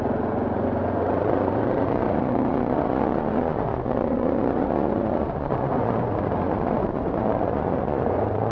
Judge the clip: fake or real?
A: fake